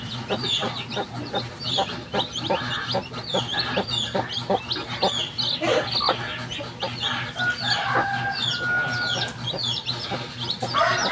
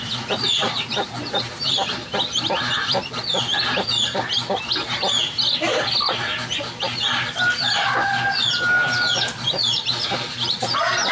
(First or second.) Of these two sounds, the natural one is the first